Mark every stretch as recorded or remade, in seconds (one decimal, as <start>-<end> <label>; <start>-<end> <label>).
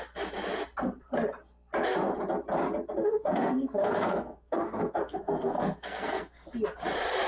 0.0-3.0 recorded; 3.0-6.5 remade; 6.5-7.3 recorded